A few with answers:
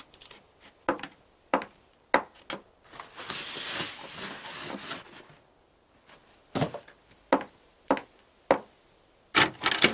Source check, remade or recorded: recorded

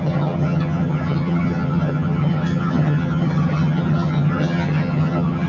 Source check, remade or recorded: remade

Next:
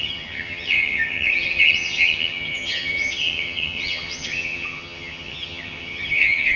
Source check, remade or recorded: remade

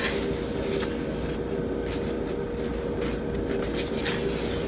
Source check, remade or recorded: recorded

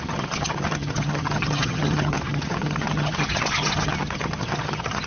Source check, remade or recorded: remade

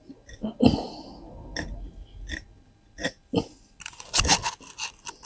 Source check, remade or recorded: recorded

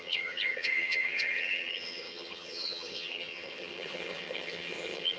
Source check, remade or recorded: remade